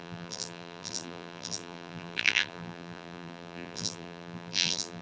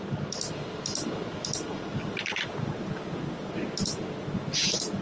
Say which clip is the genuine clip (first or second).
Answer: second